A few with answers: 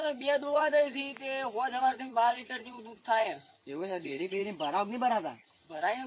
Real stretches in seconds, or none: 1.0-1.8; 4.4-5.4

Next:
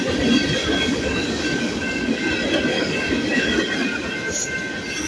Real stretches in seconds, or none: 0.0-0.6; 2.3-2.7; 3.6-5.1

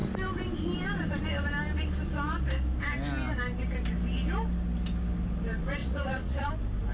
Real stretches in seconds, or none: 0.0-5.8; 6.5-6.9

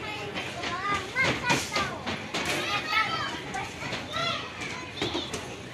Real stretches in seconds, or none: 0.9-2.8; 4.2-5.3

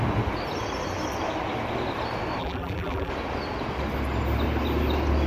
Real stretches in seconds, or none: 0.0-2.4; 3.1-5.3